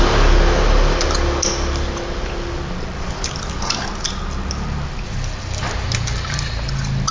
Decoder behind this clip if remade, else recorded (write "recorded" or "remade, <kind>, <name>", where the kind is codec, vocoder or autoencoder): recorded